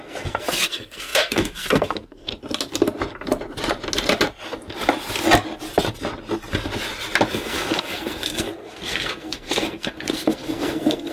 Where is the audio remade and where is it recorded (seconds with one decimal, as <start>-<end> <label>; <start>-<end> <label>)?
0.0-2.3 remade; 2.3-7.3 recorded; 7.3-11.1 remade